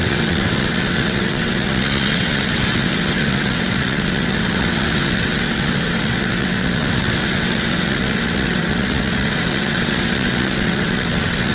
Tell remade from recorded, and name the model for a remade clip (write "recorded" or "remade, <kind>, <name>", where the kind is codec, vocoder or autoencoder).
remade, vocoder, WaveNeXt